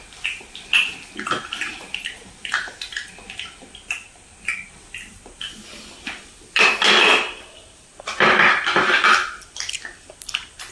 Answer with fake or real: real